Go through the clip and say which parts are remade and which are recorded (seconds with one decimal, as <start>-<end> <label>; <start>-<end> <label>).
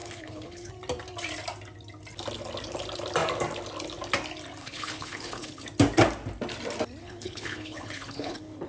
0.0-0.7 remade; 0.7-4.6 recorded; 4.6-5.6 remade; 5.6-7.0 recorded; 7.0-8.7 remade